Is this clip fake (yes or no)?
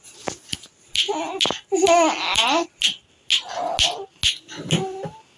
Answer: no